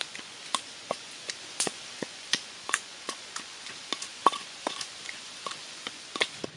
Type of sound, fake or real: fake